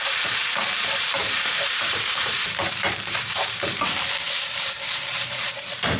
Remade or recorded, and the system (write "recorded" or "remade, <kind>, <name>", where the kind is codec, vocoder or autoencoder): remade, vocoder, BigVGAN v2